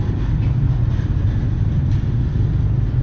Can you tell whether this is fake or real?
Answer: fake